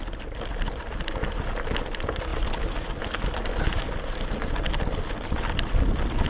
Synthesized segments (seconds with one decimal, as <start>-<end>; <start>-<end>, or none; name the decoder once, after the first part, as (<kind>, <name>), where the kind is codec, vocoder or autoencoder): none